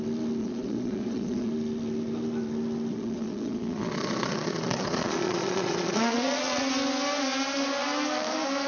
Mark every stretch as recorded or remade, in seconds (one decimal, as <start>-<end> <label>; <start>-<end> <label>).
0.0-0.4 recorded; 0.4-1.5 remade; 1.5-2.9 recorded; 2.9-6.7 remade; 6.7-8.7 recorded